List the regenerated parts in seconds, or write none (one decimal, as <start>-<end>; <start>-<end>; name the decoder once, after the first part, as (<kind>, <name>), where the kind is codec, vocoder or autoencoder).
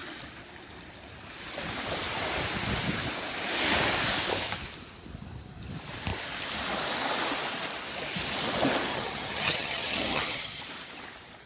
8.9-10.6 (vocoder, HiFi-GAN)